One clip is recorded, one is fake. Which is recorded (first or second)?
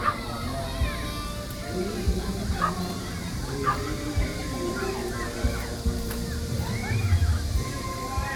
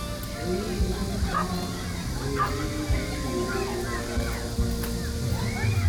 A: second